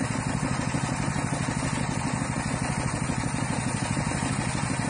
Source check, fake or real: real